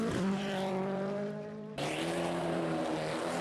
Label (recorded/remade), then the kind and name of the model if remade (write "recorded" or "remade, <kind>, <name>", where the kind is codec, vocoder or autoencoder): remade, vocoder, BigVGAN v2